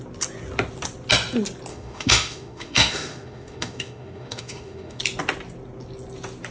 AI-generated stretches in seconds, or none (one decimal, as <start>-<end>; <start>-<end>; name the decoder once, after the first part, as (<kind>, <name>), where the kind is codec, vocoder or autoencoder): 1.7-5.0 (autoencoder, DAC-VAE)